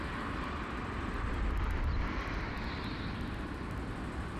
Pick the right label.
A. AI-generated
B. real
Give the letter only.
A